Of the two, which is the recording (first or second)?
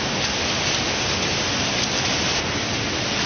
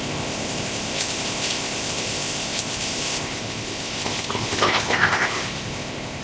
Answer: first